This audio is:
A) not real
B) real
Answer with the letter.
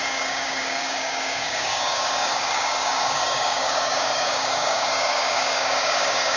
A